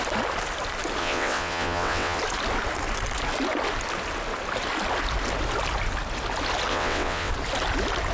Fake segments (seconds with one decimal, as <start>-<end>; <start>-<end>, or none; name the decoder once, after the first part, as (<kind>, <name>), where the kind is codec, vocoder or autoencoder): 1.0-2.2 (vocoder, WaveNeXt); 6.7-7.3